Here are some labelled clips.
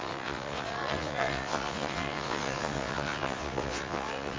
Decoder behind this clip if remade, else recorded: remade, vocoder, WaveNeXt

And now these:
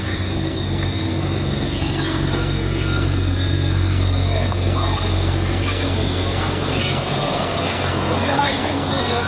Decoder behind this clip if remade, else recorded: remade, codec, SNAC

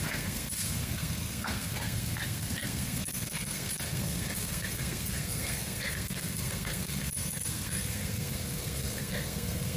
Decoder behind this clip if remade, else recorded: remade, codec, SNAC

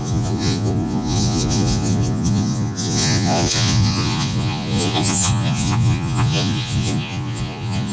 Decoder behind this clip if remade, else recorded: remade, vocoder, Vocos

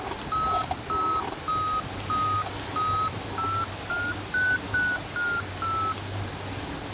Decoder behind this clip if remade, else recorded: recorded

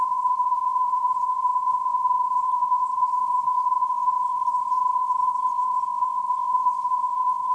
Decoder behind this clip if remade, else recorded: remade, codec, HILCodec